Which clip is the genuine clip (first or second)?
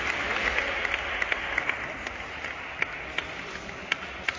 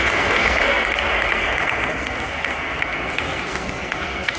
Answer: first